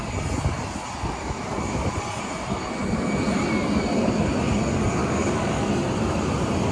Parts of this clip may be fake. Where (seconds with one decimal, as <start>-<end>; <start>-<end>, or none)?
5.0-5.7